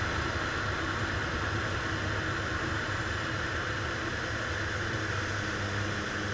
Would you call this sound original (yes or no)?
yes